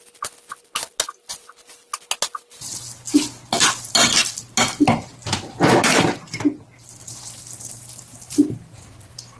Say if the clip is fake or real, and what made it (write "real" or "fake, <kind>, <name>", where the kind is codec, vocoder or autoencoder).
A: real